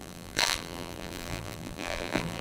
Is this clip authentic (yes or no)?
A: no